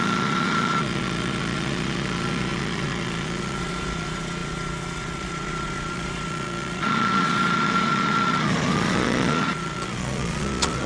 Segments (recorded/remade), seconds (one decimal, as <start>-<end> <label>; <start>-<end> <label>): 0.0-10.9 remade